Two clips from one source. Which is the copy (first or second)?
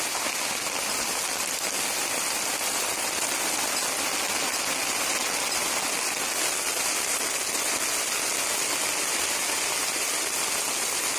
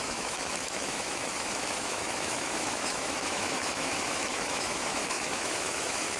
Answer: second